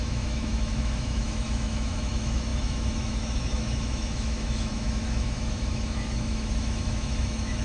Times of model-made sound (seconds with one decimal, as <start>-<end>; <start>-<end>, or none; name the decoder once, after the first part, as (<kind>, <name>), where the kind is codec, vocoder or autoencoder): 0.0-7.6 (autoencoder, DAC-VAE)